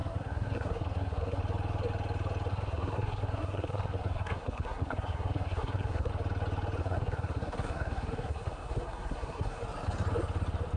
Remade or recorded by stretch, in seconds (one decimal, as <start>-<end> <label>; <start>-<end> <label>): 0.0-1.4 remade; 1.4-2.5 recorded; 2.5-6.1 remade; 6.1-6.8 recorded; 6.8-9.6 remade; 9.6-10.8 recorded